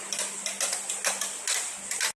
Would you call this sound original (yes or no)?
yes